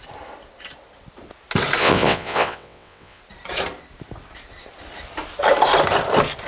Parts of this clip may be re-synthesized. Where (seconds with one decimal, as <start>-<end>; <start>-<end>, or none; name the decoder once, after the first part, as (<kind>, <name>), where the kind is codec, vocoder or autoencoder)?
1.8-3.2 (vocoder, WaveNeXt)